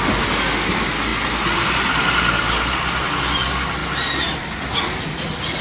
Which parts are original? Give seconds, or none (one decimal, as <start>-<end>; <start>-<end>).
0.0-5.6